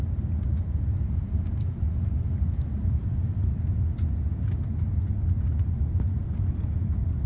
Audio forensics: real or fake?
real